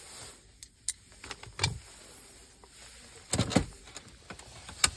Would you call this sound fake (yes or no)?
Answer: no